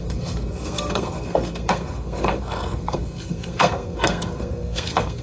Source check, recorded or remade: remade